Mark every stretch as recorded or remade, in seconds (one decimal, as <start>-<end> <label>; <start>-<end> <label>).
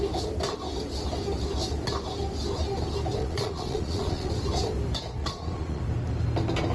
0.0-3.2 recorded; 3.2-4.3 remade; 4.3-5.2 recorded; 5.2-5.8 remade; 5.8-6.7 recorded